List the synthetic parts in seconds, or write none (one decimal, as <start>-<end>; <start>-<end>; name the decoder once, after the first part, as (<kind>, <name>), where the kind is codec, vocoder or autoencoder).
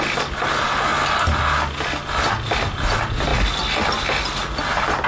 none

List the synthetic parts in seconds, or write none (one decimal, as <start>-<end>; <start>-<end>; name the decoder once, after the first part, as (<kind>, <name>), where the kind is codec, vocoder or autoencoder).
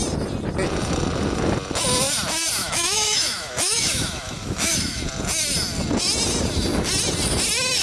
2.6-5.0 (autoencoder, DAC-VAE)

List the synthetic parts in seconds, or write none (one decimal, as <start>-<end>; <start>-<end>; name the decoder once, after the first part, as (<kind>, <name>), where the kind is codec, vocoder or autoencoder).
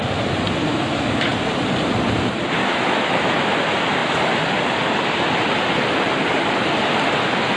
0.7-1.3 (autoencoder, DAC-VAE); 2.6-3.5